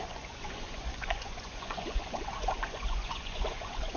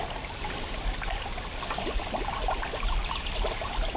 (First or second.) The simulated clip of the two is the first